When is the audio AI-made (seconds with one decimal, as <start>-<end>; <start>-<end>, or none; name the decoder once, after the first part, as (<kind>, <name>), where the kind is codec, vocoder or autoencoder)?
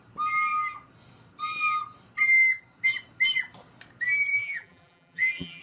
4.3-5.6 (vocoder, BigVGAN v2)